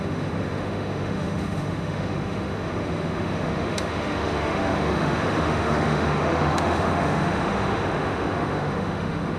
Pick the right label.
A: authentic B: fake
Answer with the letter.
B